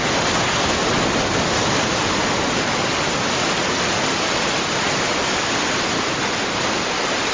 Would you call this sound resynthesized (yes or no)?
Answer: no